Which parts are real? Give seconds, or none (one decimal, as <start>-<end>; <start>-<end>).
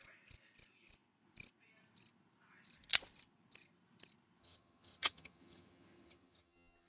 0.0-4.4